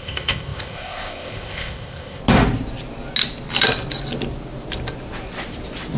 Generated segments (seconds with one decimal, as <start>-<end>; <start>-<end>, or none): 0.0-2.2